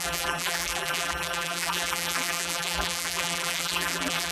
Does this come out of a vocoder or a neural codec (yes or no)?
yes